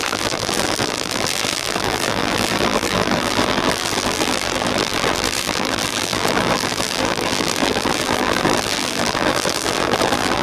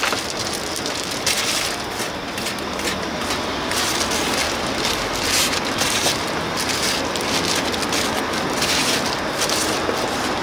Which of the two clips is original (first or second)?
second